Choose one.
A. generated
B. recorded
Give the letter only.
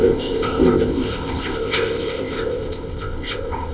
A